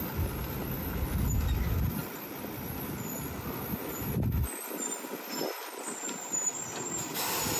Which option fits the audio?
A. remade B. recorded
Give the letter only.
B